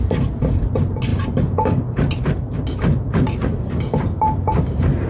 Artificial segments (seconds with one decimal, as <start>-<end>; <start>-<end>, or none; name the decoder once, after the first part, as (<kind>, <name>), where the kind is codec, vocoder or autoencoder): none